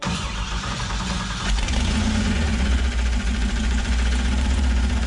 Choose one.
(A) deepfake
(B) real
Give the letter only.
A